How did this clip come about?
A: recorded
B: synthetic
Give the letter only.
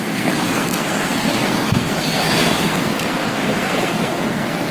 B